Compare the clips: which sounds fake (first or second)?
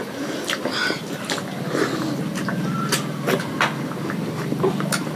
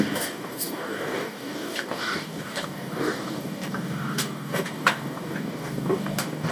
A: second